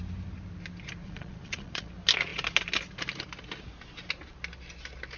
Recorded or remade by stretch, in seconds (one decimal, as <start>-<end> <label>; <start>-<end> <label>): 0.0-1.0 recorded; 1.0-1.9 remade; 1.9-5.2 recorded